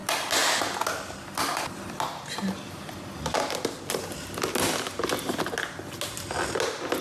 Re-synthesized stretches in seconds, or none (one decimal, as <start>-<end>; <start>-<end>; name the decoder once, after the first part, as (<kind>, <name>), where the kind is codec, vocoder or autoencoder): none